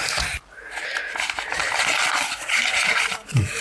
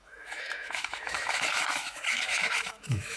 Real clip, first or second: first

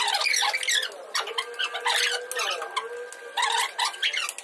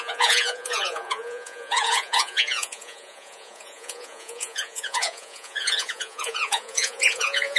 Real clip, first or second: first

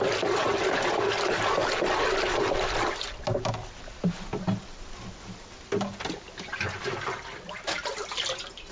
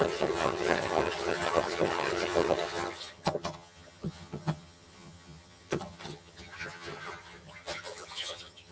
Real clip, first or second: first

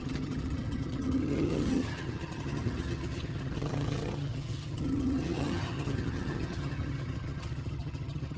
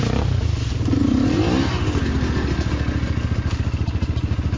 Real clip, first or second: second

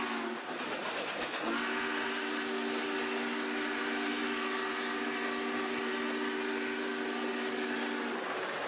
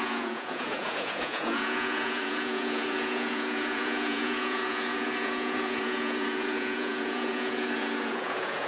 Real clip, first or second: first